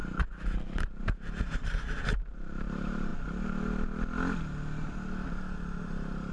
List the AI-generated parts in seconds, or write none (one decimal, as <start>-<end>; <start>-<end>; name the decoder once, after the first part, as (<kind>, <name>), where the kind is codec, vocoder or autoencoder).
1.0-3.1 (vocoder, BigVGAN v2); 5.8-6.3